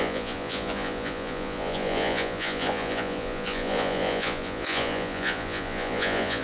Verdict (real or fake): fake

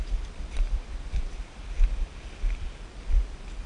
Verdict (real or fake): fake